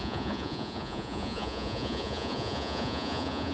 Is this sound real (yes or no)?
no